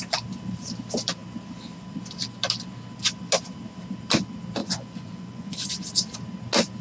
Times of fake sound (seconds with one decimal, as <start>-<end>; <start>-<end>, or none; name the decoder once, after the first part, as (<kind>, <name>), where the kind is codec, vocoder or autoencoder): 4.6-5.7 (vocoder, Vocos)